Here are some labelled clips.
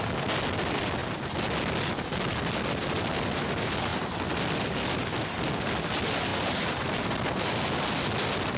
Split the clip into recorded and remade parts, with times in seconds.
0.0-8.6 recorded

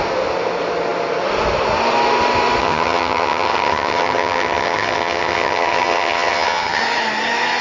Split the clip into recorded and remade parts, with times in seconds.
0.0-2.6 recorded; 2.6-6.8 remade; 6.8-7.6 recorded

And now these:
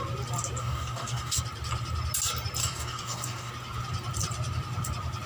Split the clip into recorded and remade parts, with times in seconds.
0.0-0.6 recorded; 0.6-1.4 remade; 1.4-2.6 recorded; 2.6-3.5 remade; 3.5-5.3 recorded

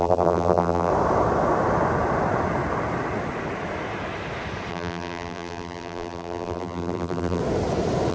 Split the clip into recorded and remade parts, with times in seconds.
0.0-0.9 remade; 0.9-4.7 recorded; 4.7-7.4 remade; 7.4-8.1 recorded